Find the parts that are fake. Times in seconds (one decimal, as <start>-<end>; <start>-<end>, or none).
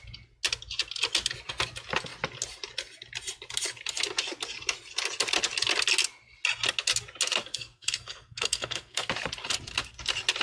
7.5-9.1